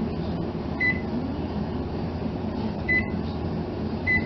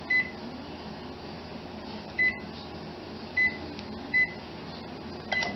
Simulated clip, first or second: first